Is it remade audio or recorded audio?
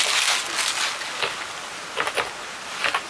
recorded